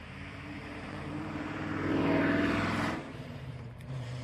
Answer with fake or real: fake